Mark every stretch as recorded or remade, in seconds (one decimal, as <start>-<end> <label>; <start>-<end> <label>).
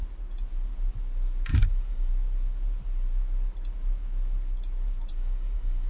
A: 0.0-1.5 recorded; 1.5-2.1 remade; 2.1-5.1 recorded; 5.1-5.9 remade